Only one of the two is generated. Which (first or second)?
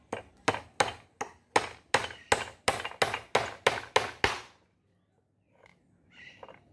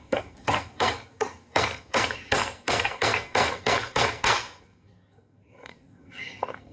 second